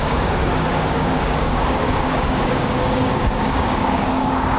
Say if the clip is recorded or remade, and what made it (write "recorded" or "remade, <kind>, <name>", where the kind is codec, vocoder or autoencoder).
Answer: remade, codec, DAC